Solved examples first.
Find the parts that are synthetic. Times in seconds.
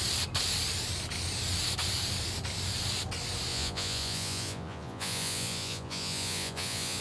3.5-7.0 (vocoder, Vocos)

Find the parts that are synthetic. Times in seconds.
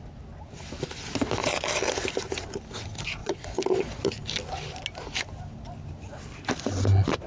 3.2-4.2 (vocoder, Vocos)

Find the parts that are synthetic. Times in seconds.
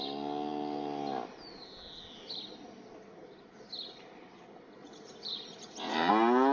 4.8-6.1 (vocoder, Vocos)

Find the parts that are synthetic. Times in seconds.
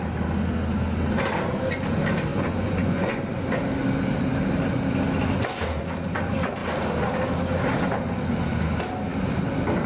2.3-3.2 (vocoder, Vocos)